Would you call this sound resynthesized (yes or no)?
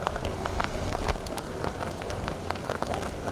yes